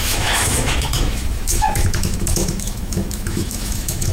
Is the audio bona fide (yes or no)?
no